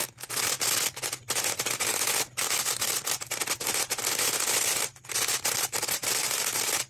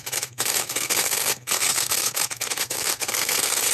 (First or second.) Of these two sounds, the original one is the first